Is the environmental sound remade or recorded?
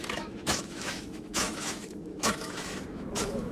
remade